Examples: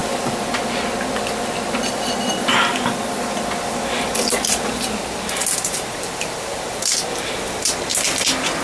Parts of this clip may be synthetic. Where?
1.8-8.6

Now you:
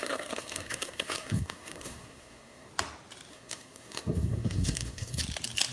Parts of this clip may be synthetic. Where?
0.0-2.7; 3.3-5.2